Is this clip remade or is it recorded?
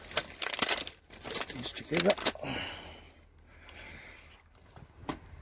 recorded